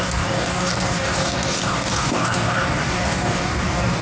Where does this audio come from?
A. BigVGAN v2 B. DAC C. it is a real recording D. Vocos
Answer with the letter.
B